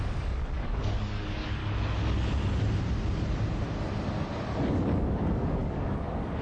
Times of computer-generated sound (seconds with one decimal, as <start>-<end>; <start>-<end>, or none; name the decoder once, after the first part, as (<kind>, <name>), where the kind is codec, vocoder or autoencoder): 0.0-1.6 (codec, DAC); 4.7-6.4